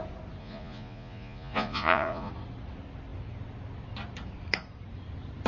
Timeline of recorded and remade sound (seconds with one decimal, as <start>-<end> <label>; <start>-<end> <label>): 0.0-0.4 recorded; 0.4-2.3 remade; 2.3-5.5 recorded